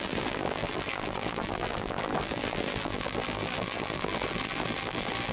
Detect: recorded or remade remade